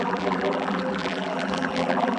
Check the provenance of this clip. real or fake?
fake